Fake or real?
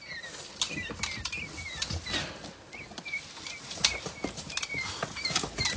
real